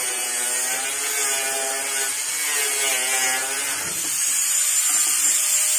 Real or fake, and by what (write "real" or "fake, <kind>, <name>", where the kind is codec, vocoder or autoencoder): real